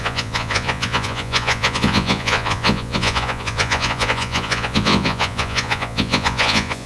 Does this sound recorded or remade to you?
remade